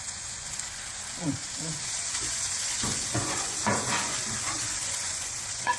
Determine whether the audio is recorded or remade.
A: remade